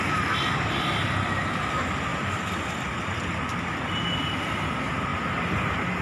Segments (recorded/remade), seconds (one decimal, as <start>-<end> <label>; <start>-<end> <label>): 0.0-6.0 recorded

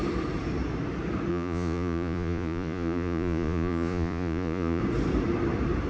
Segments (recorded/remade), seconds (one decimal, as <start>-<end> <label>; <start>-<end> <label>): 0.0-1.3 recorded; 1.3-4.8 remade; 4.8-5.9 recorded

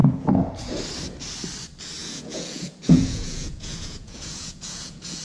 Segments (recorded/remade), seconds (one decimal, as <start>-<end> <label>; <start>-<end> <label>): 0.0-0.7 remade; 0.7-2.0 recorded; 2.0-5.2 remade

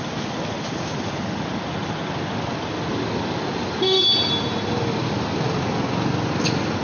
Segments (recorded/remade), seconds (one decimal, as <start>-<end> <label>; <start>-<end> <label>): 0.0-6.8 recorded

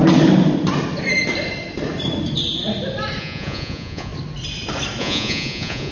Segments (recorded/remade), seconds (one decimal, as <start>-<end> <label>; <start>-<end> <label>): 0.0-3.2 recorded; 3.2-4.1 remade; 4.1-5.0 recorded; 5.0-5.9 remade

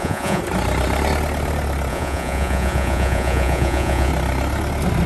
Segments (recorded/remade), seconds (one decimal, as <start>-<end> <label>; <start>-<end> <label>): 0.0-0.4 remade; 0.4-1.9 recorded; 1.9-4.1 remade; 4.1-5.1 recorded